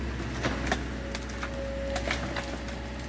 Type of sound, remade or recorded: recorded